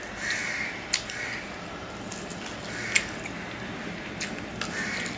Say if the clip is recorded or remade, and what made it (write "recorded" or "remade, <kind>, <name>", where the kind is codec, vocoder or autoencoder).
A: recorded